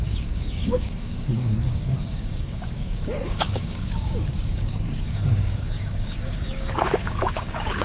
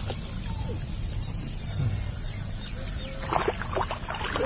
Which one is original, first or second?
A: second